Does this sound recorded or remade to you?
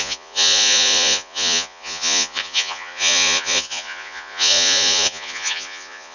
remade